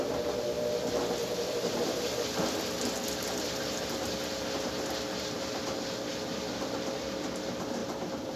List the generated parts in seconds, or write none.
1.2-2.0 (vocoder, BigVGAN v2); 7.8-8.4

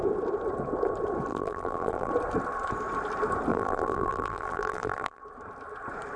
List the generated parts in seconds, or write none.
1.3-2.1 (vocoder, BigVGAN v2); 3.5-5.2

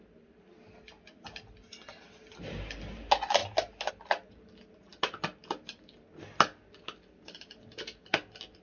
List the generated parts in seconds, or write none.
none

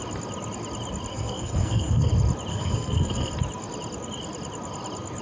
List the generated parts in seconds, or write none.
1.1-2.1 (codec, SNAC); 2.5-3.3

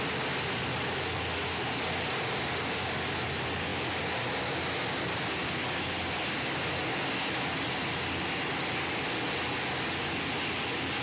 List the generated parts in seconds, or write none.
none

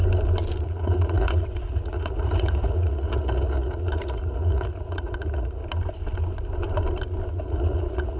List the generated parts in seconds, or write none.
0.6-5.6 (vocoder, Vocos); 7.3-8.2

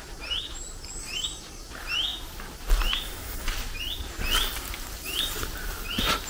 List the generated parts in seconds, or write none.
none

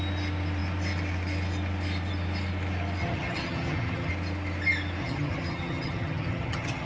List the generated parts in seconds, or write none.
3.0-4.1 (vocoder, HiFi-GAN); 5.0-6.9